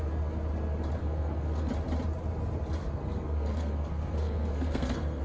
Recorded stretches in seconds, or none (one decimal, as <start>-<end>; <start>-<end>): 0.0-1.0; 1.7-2.8